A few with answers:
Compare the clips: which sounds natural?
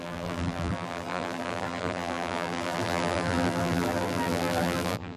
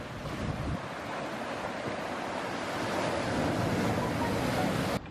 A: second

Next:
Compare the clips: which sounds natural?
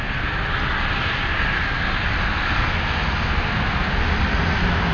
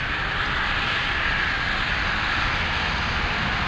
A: first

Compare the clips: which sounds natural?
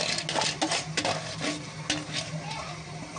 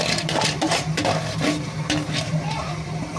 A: first